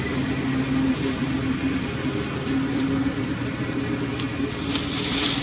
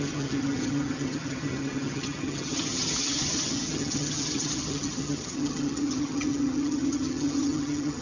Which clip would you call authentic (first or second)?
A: first